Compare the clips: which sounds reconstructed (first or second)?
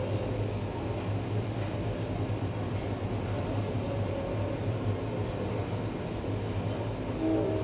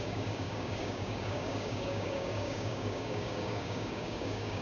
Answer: second